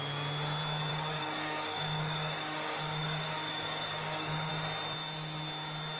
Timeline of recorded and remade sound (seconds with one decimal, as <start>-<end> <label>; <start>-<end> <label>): 0.0-0.9 recorded; 0.9-4.5 remade; 4.5-6.0 recorded